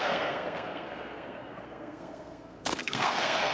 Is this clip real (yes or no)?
no